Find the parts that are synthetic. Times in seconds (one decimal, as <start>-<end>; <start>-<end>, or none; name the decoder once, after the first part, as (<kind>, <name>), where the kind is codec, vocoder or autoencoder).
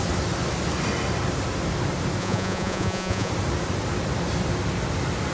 2.2-3.3 (vocoder, Vocos)